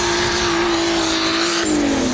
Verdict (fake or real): real